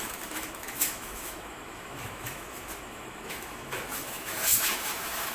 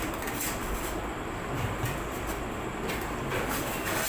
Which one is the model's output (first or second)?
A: first